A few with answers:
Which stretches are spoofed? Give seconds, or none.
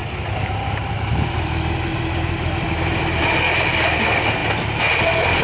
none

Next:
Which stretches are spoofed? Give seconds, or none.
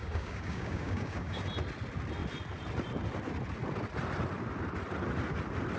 0.0-1.4 (codec, DAC)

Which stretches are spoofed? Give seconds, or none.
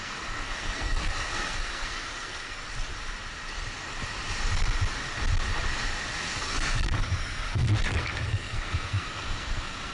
0.0-2.6 (codec, SNAC); 6.4-9.9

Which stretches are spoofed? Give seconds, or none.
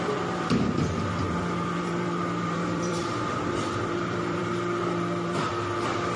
0.0-5.5 (vocoder, BigVGAN v2)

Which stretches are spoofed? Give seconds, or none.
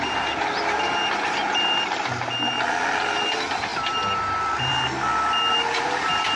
none